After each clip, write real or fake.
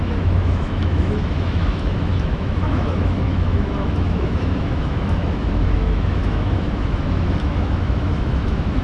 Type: fake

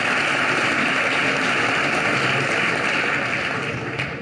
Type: real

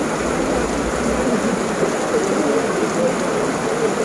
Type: real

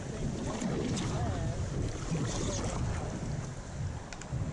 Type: real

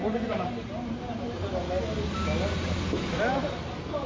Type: real